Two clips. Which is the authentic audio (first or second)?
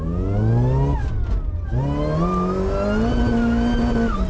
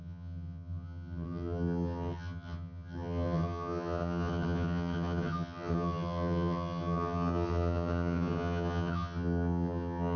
first